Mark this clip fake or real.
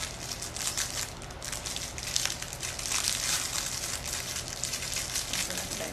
real